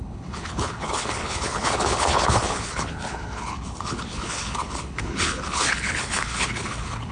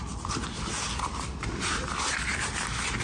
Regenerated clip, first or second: first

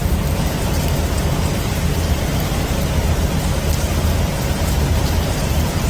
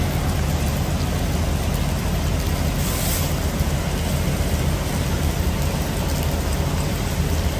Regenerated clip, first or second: first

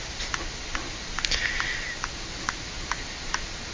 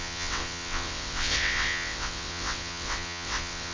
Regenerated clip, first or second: second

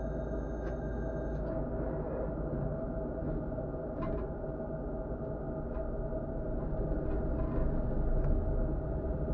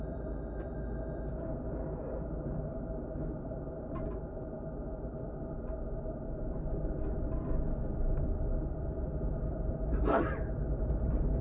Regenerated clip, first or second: second